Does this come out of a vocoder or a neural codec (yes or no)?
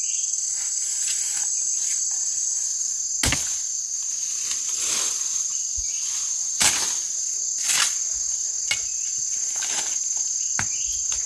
no